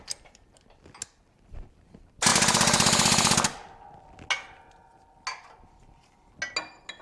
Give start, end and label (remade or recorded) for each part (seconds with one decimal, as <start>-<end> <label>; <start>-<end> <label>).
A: 0.0-7.0 recorded